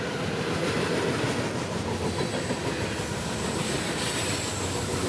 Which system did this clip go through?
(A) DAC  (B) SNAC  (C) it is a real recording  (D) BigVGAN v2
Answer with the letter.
C